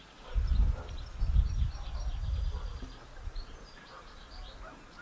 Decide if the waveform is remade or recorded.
recorded